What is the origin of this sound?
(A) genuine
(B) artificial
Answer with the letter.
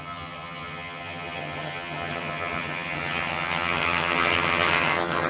B